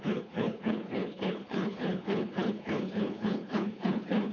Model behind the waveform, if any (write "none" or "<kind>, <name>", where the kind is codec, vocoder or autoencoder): codec, HILCodec